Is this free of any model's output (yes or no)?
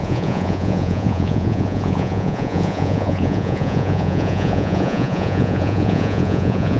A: no